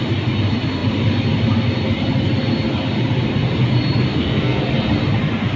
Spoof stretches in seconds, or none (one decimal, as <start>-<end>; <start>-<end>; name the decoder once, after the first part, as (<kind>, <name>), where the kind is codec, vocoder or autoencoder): 4.1-4.6 (codec, SNAC)